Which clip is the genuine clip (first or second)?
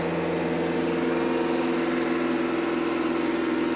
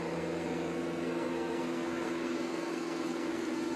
first